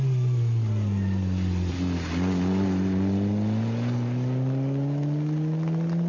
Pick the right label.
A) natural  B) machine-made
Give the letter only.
A